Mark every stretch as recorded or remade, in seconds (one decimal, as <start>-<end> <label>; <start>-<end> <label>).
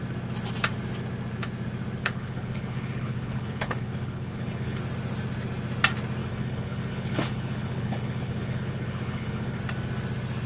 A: 0.0-2.0 recorded; 2.0-4.8 remade; 4.8-6.2 recorded; 6.2-9.6 remade; 9.6-10.5 recorded